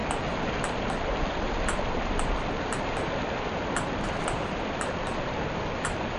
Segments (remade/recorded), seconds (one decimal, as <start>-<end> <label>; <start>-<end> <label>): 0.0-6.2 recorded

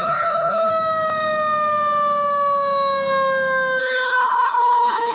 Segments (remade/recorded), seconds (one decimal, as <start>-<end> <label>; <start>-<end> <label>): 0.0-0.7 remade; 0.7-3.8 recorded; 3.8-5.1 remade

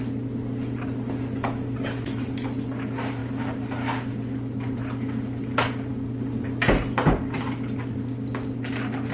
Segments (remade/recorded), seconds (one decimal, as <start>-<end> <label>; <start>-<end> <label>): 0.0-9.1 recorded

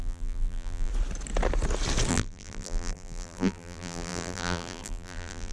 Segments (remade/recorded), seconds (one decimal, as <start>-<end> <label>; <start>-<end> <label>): 0.0-0.9 remade; 0.9-2.1 recorded; 2.1-5.5 remade

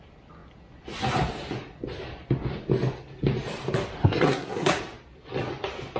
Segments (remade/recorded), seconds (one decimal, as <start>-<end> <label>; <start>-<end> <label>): 0.0-4.0 recorded; 4.0-4.8 remade; 4.8-6.0 recorded

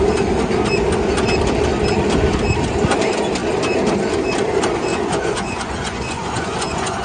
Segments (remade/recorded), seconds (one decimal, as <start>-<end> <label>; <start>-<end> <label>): 0.0-4.9 recorded; 4.9-7.0 remade